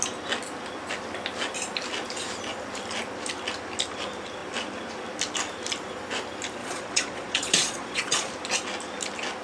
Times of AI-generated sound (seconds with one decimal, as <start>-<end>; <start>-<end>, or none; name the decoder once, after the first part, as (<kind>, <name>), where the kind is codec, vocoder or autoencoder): 6.6-8.3 (vocoder, Vocos)